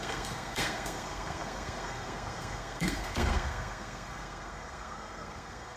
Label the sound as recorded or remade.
remade